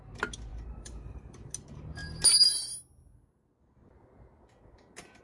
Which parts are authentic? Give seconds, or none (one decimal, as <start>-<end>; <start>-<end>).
0.0-0.5; 1.5-5.2